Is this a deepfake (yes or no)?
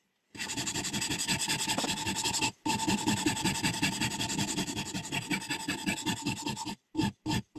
no